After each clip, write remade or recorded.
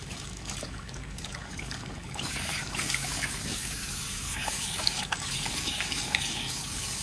remade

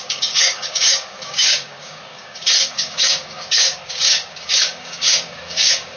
remade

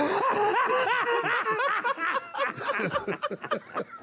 recorded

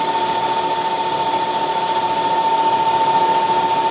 recorded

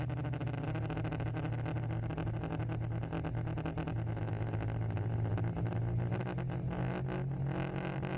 recorded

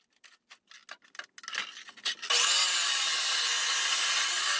recorded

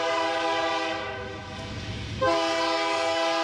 remade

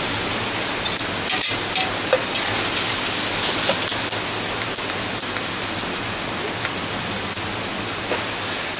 recorded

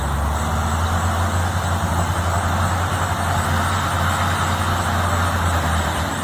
recorded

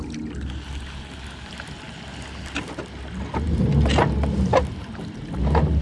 recorded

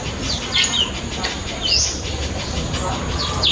recorded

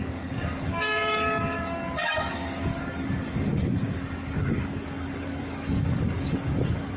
remade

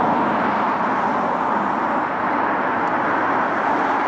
recorded